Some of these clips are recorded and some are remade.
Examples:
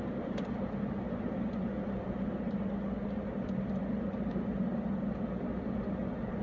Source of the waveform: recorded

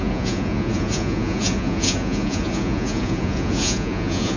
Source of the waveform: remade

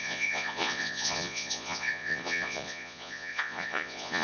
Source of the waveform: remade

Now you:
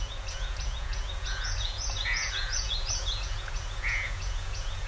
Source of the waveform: remade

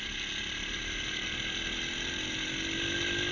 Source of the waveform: recorded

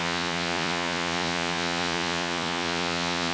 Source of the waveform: remade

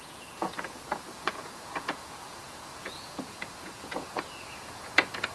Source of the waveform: remade